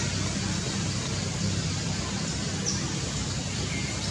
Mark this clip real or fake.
real